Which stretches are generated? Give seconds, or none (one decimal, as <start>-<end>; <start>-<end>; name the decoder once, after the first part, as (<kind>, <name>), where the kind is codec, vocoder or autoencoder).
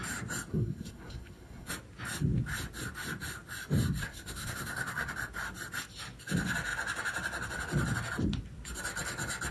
0.5-1.7 (codec, SNAC); 4.0-5.1